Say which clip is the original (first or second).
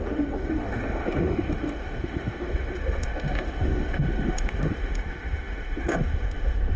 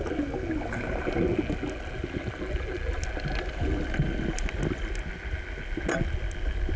second